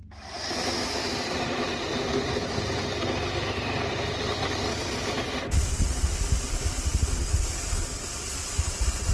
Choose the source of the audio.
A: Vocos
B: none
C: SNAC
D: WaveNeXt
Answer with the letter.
B